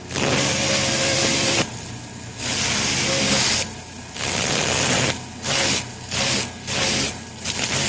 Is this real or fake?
fake